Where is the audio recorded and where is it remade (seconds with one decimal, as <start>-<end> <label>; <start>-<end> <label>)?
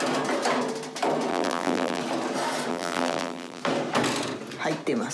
0.0-1.3 recorded; 1.3-2.0 remade; 2.0-2.7 recorded; 2.7-3.6 remade; 3.6-5.1 recorded